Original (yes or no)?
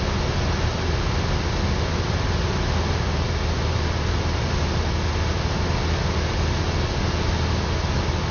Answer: yes